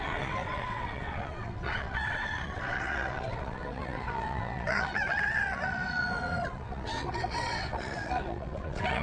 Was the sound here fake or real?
fake